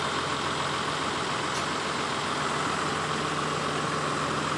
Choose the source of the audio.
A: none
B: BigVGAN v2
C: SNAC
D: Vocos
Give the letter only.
A